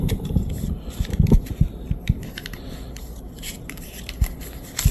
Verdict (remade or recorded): recorded